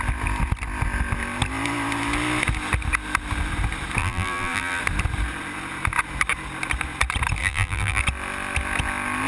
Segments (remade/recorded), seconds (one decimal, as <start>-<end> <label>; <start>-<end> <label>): 0.0-4.0 recorded; 4.0-4.8 remade; 4.8-7.4 recorded; 7.4-8.0 remade; 8.0-9.3 recorded